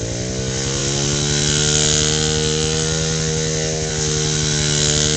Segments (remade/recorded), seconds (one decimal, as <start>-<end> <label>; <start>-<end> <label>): 0.0-5.2 recorded